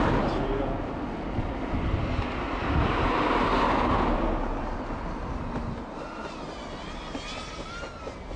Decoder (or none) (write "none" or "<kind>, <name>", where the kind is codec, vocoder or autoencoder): none